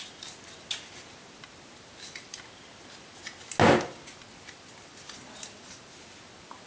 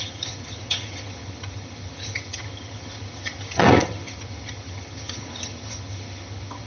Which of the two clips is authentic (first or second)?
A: first